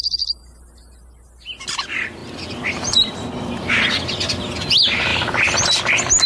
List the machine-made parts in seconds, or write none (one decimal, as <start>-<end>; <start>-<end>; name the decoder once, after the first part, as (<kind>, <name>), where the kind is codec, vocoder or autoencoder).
5.1-5.8 (vocoder, BigVGAN v2)